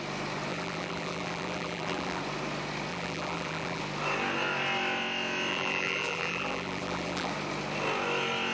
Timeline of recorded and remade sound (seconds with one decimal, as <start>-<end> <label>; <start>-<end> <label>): 0.0-0.5 recorded; 0.5-2.2 remade; 2.2-2.9 recorded; 2.9-3.8 remade; 3.8-5.5 recorded; 5.5-7.3 remade; 7.3-8.5 recorded